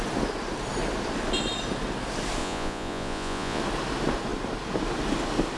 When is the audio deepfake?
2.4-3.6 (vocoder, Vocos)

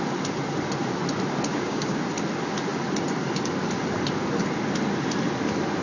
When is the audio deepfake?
1.5-2.0 (codec, DAC)

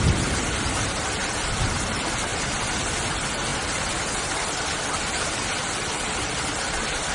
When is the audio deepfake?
none

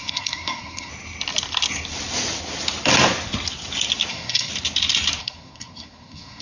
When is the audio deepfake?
0.0-0.9 (codec, SNAC); 4.1-4.5; 5.2-6.4

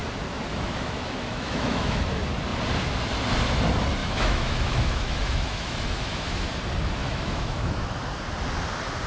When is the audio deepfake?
0.5-2.0 (autoencoder, DAC-VAE); 4.0-6.5; 7.0-8.1

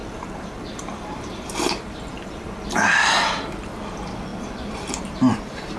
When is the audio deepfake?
0.0-5.8 (vocoder, BigVGAN v2)

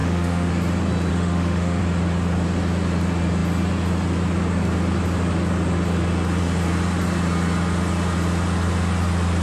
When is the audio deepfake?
0.0-0.5 (autoencoder, DAC-VAE); 1.1-1.8